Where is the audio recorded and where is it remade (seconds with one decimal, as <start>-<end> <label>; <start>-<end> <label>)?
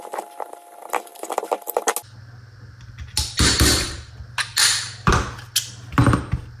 0.0-6.6 recorded